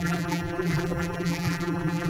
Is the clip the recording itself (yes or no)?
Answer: no